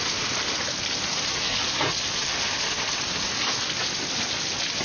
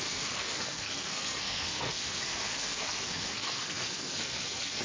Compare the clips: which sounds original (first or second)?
first